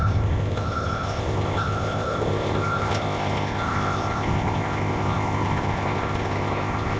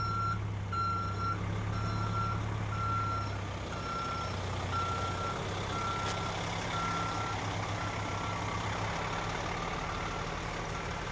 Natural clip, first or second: second